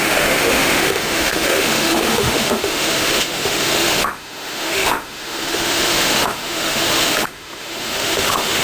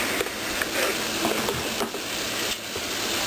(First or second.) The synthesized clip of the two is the first